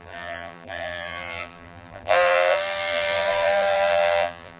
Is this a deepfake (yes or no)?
yes